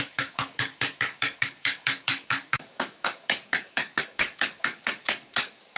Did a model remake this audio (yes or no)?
yes